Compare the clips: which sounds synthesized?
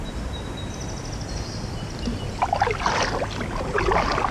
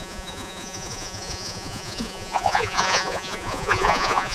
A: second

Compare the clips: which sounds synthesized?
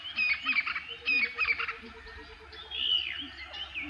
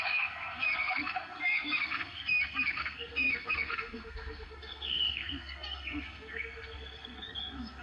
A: second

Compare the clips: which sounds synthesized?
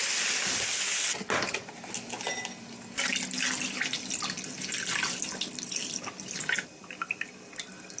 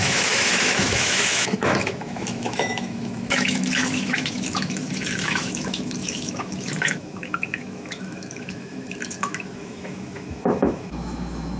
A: second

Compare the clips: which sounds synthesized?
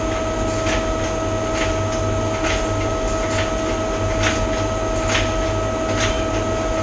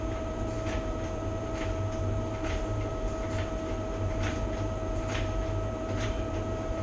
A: second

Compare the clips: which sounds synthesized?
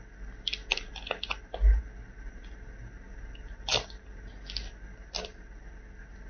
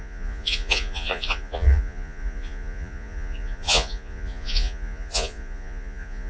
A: second